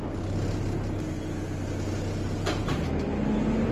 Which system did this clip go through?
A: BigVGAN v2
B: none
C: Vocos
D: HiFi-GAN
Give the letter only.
B